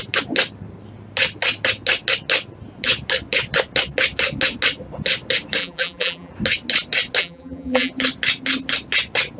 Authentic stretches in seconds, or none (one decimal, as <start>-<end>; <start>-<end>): 0.0-5.6; 6.3-7.2; 7.9-9.4